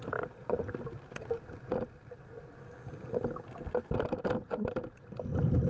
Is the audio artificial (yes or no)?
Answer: no